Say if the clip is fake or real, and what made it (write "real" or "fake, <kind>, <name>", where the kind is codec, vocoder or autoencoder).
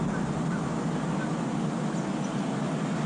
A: real